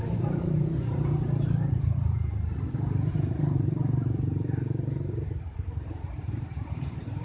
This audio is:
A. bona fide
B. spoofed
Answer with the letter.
B